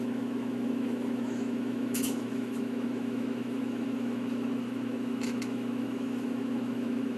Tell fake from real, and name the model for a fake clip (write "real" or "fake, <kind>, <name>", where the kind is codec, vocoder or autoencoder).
fake, autoencoder, DAC-VAE